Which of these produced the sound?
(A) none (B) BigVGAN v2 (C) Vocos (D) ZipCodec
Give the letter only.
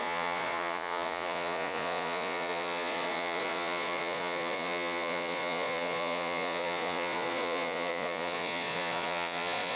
C